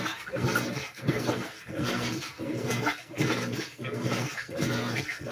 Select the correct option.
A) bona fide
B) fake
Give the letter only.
B